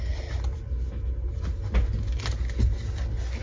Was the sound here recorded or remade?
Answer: recorded